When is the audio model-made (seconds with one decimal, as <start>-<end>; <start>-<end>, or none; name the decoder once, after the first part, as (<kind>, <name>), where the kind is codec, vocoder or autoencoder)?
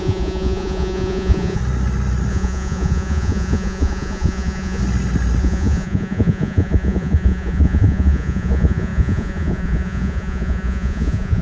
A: 0.0-1.6 (vocoder, Vocos); 2.3-4.8; 5.4-11.4